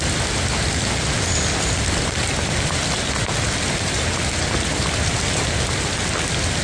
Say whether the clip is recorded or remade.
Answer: recorded